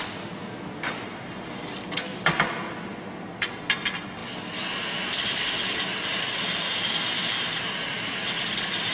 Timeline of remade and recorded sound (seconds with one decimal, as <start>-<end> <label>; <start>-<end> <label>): 0.0-8.9 recorded